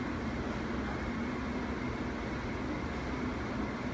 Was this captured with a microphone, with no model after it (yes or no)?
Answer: yes